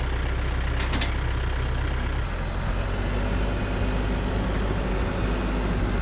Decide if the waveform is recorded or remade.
recorded